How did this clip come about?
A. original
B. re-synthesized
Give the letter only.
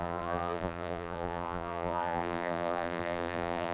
B